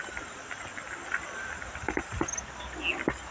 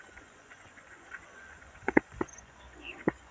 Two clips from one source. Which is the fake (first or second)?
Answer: second